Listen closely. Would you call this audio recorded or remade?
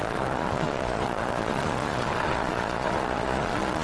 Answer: remade